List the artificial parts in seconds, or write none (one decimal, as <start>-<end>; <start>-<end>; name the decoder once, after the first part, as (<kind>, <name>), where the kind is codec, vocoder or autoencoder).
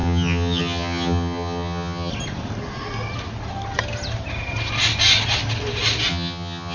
0.0-2.1 (vocoder, HiFi-GAN); 6.1-6.7